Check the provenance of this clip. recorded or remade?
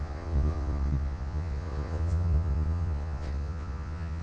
remade